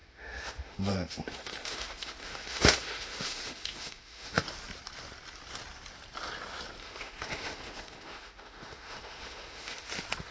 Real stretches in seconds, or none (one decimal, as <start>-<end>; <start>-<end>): 4.4-6.8; 9.9-10.3